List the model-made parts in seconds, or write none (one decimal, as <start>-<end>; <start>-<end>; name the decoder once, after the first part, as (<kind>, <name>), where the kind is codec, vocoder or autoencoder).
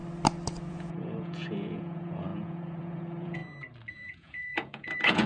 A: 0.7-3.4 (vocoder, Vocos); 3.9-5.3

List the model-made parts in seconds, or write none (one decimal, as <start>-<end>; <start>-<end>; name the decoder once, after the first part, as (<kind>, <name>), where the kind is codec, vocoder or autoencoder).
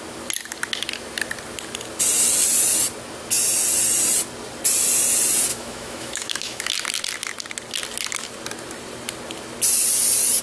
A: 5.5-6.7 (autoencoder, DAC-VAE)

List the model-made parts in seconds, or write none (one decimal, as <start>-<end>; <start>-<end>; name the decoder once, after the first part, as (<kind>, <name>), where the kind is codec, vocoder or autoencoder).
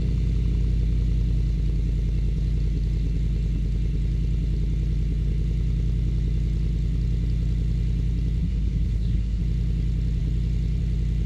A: 8.4-9.4 (codec, SNAC)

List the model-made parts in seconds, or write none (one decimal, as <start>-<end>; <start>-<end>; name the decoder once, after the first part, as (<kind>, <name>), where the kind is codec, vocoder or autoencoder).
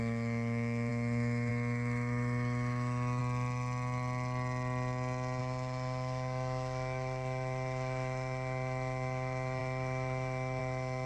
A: 0.0-3.2 (autoencoder, DAC-VAE); 5.4-11.1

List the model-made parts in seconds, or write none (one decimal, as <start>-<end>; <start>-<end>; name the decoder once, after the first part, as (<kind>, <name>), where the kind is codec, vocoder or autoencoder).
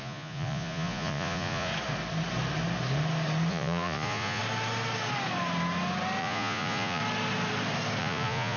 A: 0.0-1.7 (vocoder, Vocos); 3.5-4.4; 6.2-7.0; 8.0-8.6